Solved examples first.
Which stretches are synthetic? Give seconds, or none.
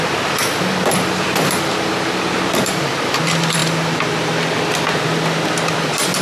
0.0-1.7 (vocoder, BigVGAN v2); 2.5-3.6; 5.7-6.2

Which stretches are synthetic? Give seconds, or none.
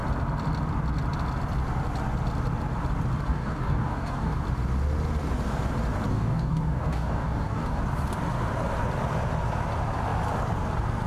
3.3-4.4 (codec, DAC); 6.1-7.8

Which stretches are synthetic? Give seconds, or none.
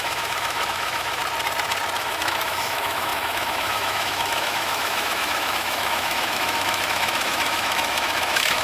0.0-1.2 (autoencoder, DAC-VAE); 2.0-8.6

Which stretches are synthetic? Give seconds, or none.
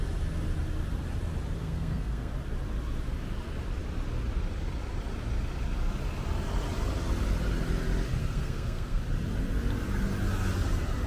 1.6-2.3 (codec, SNAC); 8.2-9.0